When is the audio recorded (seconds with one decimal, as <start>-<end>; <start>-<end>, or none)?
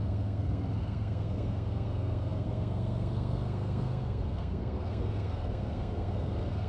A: none